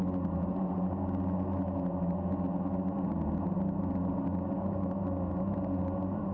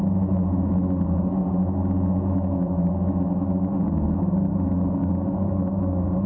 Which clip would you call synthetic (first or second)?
second